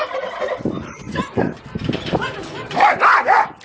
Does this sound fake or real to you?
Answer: real